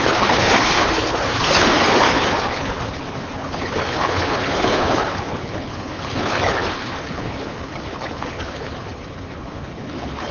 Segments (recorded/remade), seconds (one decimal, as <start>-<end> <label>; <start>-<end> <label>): 0.0-10.3 remade